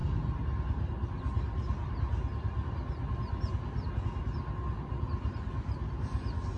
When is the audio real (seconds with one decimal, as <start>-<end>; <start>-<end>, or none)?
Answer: 0.0-6.6